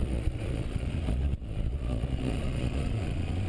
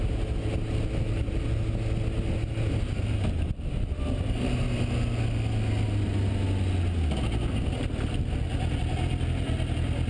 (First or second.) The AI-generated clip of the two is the first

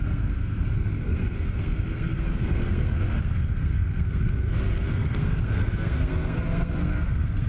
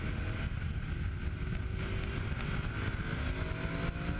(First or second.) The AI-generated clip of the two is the first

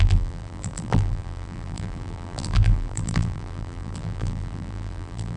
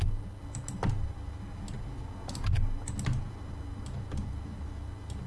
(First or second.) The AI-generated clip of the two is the first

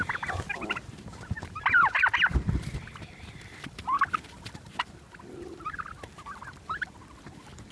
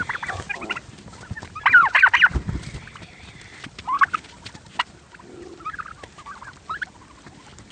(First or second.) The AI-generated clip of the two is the first